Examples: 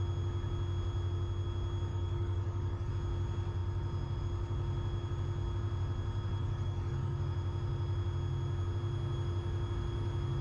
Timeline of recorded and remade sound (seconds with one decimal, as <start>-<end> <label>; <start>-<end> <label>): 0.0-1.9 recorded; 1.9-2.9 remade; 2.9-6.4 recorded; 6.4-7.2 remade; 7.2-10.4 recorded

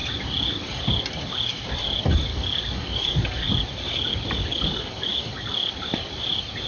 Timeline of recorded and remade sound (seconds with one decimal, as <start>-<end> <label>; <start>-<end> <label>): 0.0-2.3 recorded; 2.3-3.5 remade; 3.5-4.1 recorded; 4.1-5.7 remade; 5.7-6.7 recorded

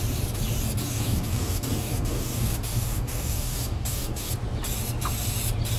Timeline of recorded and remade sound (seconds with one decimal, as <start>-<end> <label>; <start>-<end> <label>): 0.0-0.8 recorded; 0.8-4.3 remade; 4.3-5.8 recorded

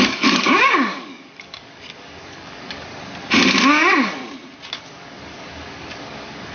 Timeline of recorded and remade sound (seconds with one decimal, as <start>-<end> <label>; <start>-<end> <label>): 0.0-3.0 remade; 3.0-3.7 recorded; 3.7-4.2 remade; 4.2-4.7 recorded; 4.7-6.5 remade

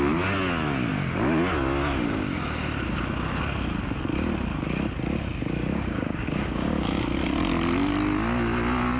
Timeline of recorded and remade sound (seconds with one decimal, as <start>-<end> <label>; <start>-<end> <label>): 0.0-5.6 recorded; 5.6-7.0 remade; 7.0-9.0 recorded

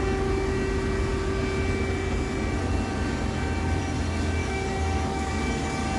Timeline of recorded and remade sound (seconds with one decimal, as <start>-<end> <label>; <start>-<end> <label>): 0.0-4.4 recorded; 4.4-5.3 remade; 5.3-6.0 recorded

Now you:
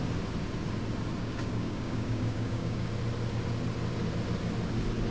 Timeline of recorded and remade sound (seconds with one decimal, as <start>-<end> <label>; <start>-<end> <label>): 0.0-1.2 recorded; 1.2-2.9 remade; 2.9-5.1 recorded

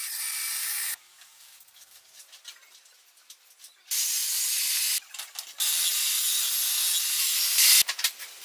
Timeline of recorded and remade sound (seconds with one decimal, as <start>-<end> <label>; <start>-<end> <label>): 0.0-0.6 recorded; 0.6-2.2 remade; 2.2-8.4 recorded